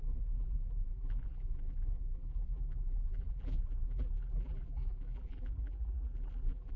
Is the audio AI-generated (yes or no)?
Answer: yes